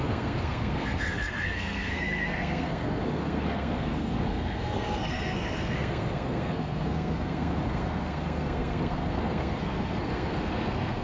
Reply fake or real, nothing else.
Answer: fake